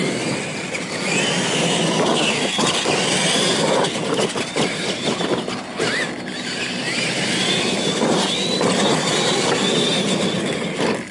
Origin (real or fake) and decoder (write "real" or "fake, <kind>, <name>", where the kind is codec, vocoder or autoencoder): real